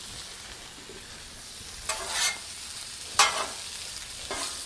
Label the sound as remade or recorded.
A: recorded